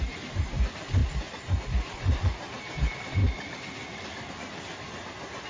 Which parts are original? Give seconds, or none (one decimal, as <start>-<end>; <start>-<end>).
0.0-5.5